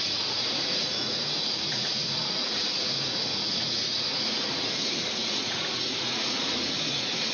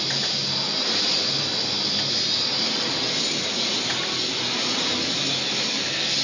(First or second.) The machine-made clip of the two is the first